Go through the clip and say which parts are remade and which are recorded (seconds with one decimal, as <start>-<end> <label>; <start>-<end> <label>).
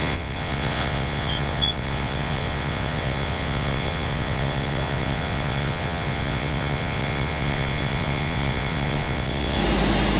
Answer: 0.0-9.6 remade; 9.6-10.2 recorded